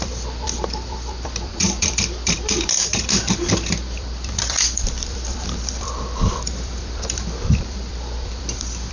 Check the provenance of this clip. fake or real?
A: fake